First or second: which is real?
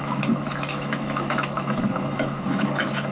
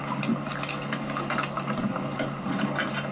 second